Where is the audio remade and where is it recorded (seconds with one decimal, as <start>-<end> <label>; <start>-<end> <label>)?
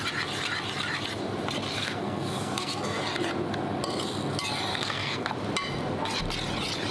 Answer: 0.0-1.8 recorded; 1.8-3.0 remade; 3.0-4.7 recorded; 4.7-5.3 remade; 5.3-6.9 recorded